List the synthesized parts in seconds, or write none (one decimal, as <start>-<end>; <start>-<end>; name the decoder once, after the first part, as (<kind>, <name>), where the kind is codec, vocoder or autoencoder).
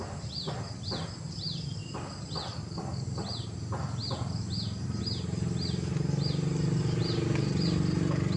1.8-5.0 (vocoder, BigVGAN v2)